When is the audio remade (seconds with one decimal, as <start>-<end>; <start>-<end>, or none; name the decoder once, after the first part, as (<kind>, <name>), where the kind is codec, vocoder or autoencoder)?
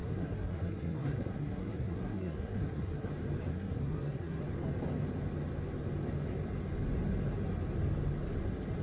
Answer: 0.0-3.1 (codec, SNAC); 3.5-4.4